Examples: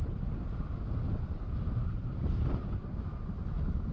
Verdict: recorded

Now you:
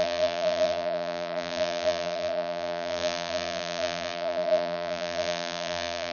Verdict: remade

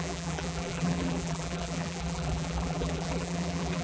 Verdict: remade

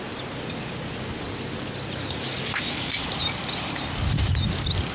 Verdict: recorded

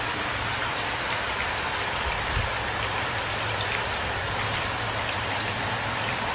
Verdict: remade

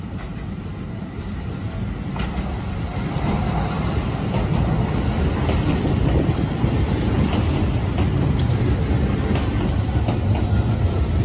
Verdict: recorded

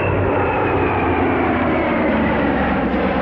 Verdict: remade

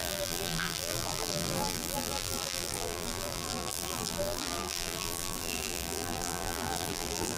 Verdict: remade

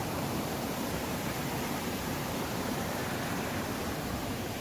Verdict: remade